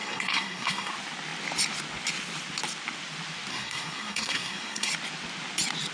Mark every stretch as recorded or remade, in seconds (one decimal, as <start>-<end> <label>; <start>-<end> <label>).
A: 0.0-0.9 remade; 0.9-3.5 recorded; 3.5-4.9 remade; 4.9-5.9 recorded